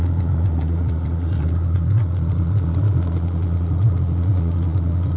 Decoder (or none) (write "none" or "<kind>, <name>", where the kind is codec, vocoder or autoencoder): vocoder, Vocos